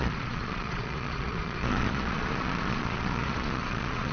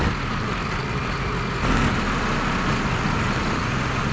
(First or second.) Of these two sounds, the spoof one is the first